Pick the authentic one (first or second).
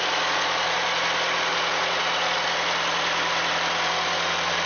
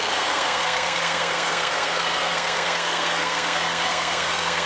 first